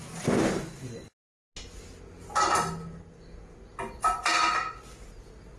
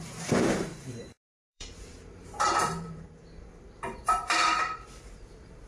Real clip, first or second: first